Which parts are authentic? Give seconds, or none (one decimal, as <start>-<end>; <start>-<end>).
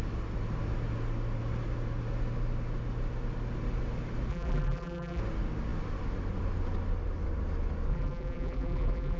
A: 0.0-4.3; 5.2-7.9